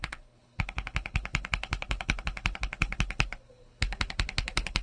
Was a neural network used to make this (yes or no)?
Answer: yes